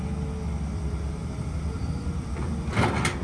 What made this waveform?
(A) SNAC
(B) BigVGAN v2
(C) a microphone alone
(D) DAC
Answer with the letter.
C